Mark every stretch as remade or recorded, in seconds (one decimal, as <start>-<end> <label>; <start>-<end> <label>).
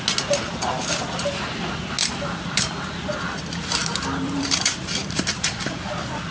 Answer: 0.0-2.0 recorded; 2.0-3.4 remade; 3.4-3.8 recorded; 3.8-5.6 remade; 5.6-6.3 recorded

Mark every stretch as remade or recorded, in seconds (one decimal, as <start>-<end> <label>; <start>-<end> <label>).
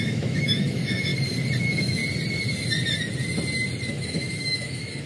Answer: 0.0-1.1 remade; 1.1-1.6 recorded; 1.6-2.0 remade; 2.0-3.9 recorded; 3.9-5.1 remade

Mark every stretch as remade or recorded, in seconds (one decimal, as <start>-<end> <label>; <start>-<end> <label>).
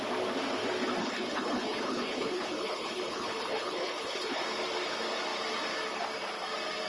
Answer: 0.0-1.0 recorded; 1.0-4.4 remade; 4.4-6.9 recorded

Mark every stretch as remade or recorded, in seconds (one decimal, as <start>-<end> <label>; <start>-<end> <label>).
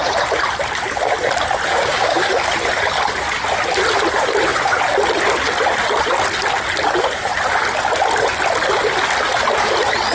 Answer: 0.0-1.7 recorded; 1.7-2.3 remade; 2.3-10.1 recorded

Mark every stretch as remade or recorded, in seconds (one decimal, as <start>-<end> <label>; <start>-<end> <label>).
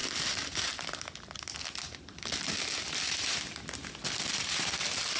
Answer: 0.0-5.2 recorded